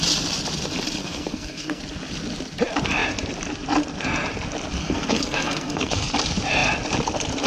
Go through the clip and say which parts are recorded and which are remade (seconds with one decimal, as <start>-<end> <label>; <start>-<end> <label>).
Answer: 0.0-1.0 recorded; 1.0-1.8 remade; 1.8-4.8 recorded; 4.8-6.1 remade; 6.1-7.5 recorded